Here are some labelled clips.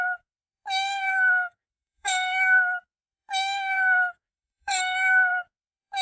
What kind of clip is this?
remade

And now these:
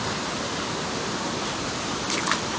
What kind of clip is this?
recorded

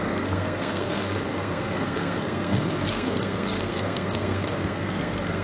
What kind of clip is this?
remade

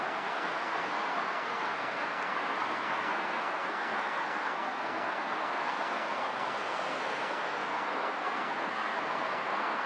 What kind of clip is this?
remade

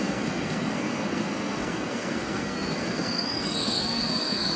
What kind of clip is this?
remade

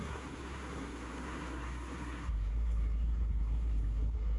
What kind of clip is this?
remade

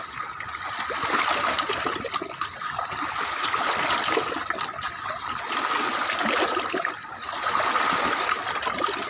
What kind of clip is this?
recorded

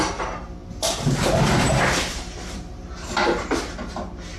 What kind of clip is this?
recorded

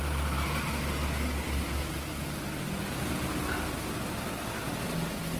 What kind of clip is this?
recorded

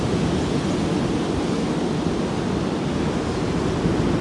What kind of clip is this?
recorded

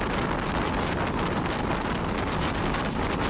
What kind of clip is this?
recorded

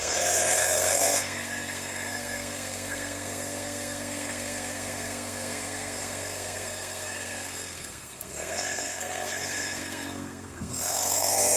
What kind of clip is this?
remade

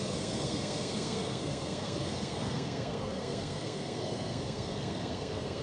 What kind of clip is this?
remade